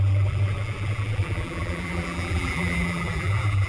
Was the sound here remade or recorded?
remade